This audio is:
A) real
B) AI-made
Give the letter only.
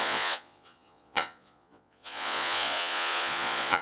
B